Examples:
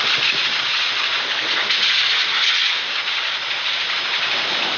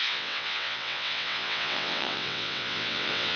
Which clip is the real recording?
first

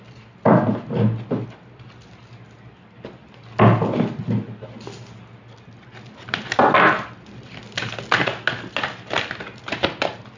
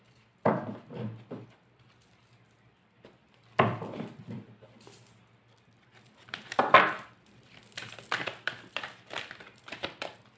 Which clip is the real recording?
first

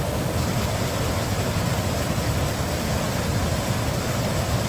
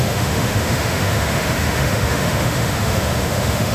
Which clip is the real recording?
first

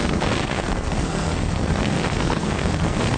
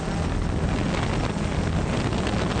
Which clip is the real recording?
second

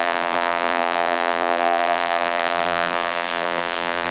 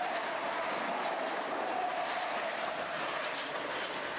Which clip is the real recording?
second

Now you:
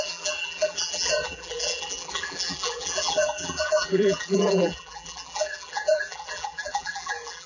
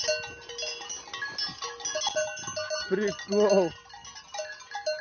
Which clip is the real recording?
second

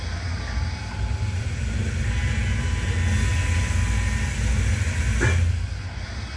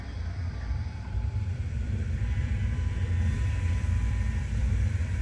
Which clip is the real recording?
first